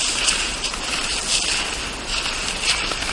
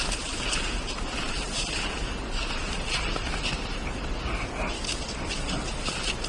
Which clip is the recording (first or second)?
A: second